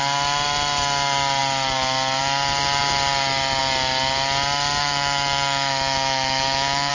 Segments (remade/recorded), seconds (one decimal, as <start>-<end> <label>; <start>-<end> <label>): 0.0-4.8 recorded; 4.8-6.9 remade